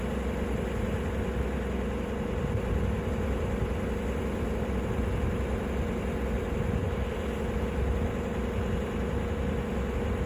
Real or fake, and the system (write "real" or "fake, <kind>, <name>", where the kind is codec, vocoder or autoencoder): real